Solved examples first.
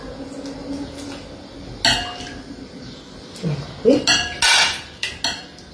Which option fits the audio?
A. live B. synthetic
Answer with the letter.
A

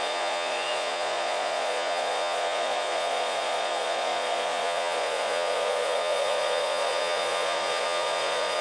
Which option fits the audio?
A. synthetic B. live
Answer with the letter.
A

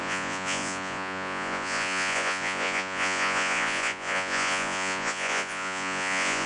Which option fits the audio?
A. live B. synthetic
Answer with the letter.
B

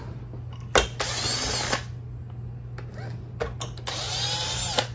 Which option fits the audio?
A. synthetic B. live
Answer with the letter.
B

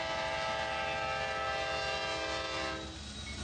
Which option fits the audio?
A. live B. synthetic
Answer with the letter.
A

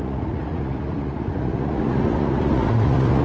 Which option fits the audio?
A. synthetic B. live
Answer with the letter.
A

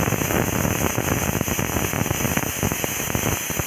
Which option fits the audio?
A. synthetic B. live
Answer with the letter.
B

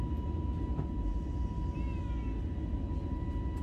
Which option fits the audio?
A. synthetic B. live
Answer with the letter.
B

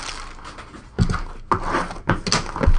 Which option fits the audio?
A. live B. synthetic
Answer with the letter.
A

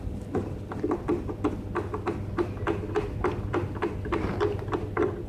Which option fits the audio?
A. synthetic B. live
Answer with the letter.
B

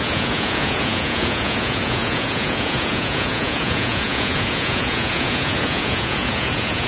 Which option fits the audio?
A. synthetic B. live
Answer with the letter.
A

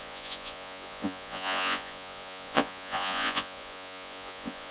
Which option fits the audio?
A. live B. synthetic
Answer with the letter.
B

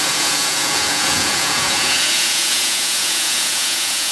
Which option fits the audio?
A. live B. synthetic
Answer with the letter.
B